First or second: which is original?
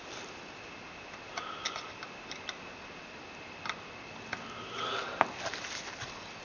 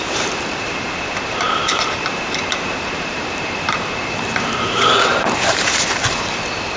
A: first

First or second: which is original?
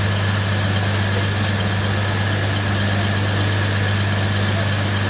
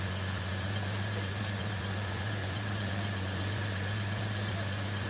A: first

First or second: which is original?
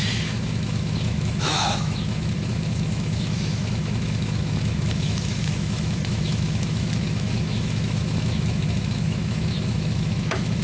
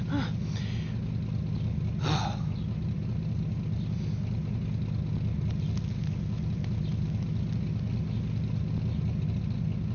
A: second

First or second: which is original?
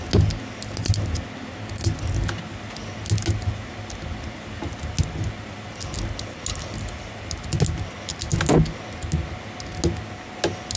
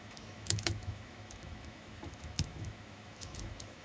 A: first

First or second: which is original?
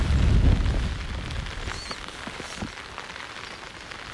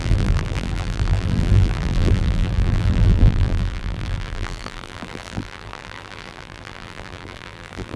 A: first